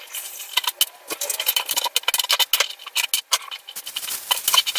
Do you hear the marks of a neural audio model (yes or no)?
no